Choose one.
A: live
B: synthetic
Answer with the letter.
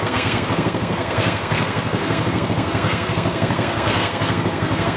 B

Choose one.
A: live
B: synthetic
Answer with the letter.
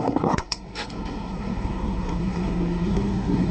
B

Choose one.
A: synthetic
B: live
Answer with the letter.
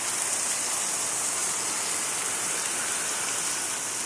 B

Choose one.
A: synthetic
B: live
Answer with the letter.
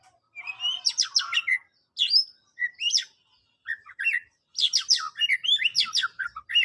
B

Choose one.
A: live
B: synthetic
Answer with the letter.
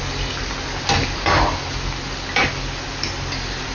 A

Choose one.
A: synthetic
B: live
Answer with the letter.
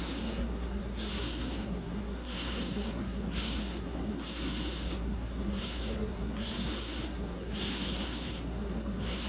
A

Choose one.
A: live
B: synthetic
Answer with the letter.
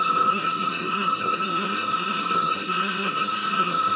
B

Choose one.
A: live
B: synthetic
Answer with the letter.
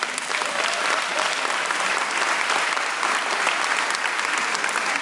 A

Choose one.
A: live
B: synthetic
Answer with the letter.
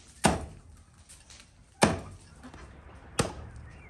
A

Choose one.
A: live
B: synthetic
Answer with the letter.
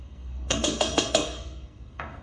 B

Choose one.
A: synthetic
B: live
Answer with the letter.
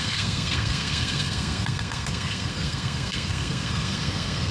A